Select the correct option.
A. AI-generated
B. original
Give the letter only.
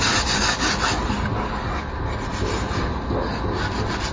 B